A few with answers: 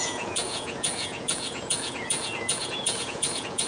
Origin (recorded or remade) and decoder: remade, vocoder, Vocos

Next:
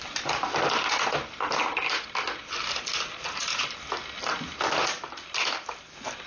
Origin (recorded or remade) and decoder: recorded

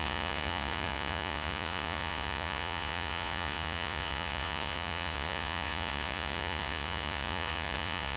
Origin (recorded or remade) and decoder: remade, vocoder, Vocos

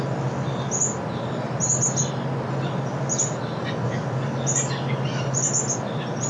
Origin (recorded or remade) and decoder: recorded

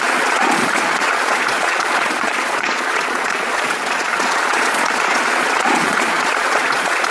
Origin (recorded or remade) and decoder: remade, vocoder, Vocos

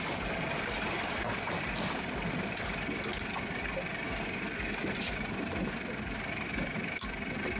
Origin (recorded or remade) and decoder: recorded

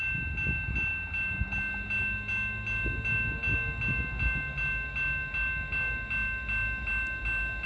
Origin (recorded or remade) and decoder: recorded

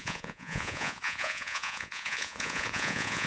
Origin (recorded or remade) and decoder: remade, vocoder, Vocos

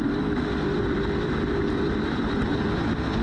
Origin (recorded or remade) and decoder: recorded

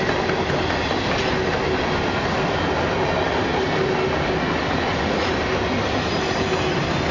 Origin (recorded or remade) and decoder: recorded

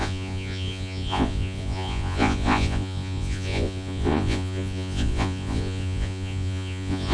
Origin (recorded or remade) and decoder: remade, vocoder, Vocos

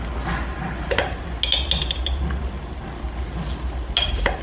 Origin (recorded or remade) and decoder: recorded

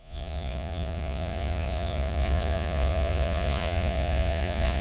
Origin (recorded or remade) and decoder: remade, vocoder, Vocos